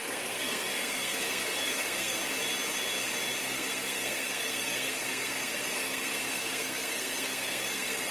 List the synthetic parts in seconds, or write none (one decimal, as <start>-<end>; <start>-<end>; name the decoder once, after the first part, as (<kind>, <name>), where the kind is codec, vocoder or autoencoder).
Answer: 0.0-2.2 (codec, SNAC); 3.4-8.1